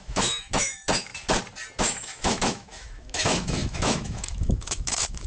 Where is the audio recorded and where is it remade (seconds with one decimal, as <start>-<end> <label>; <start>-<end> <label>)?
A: 0.0-1.1 remade; 1.1-1.8 recorded; 1.8-5.3 remade

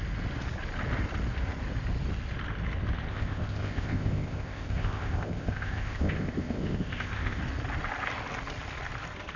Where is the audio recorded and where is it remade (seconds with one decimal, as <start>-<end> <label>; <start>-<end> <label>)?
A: 0.0-3.1 recorded; 3.1-7.4 remade; 7.4-9.4 recorded

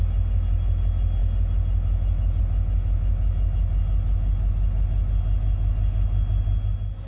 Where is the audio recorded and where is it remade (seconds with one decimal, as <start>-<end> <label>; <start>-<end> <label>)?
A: 0.0-7.1 recorded

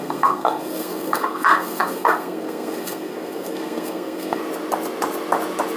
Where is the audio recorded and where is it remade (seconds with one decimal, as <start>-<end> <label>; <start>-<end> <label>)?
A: 0.0-4.4 remade; 4.4-5.8 recorded